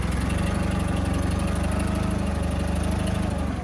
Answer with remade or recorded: recorded